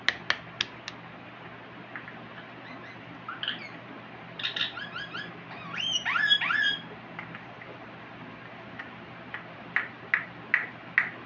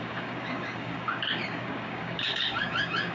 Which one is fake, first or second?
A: second